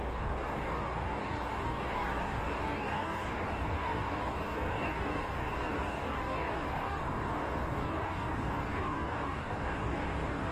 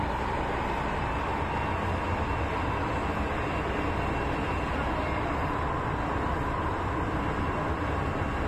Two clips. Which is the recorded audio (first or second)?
second